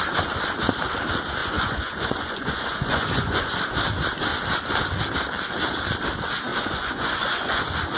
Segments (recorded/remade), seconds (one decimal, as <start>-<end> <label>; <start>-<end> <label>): 0.0-1.4 recorded; 1.4-3.6 remade; 3.6-6.5 recorded; 6.5-7.6 remade; 7.6-8.0 recorded